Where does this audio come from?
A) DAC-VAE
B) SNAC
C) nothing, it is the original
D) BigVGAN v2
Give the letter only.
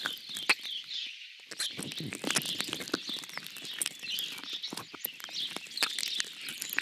C